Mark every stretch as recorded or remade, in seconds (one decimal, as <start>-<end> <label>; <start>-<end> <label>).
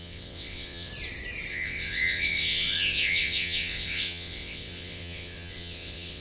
0.0-0.9 remade; 0.9-1.5 recorded; 1.5-6.2 remade